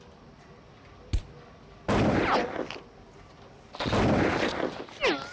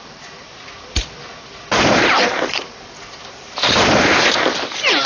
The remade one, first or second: second